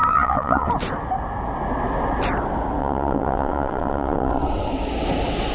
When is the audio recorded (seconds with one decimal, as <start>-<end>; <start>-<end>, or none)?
0.7-2.8; 4.7-5.5